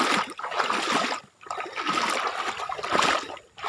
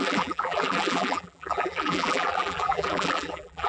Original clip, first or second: first